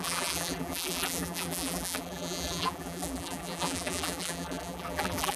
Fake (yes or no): yes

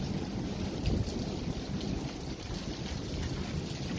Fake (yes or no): no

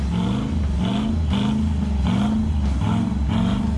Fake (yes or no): no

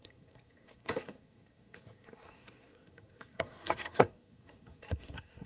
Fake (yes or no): yes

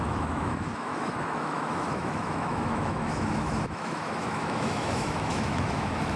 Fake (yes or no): yes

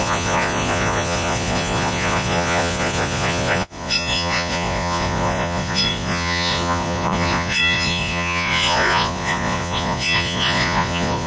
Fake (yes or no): yes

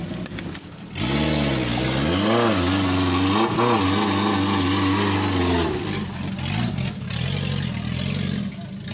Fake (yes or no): no